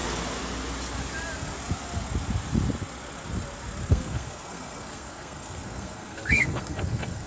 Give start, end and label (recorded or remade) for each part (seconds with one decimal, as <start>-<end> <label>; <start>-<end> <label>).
0.0-3.9 recorded; 3.9-7.3 remade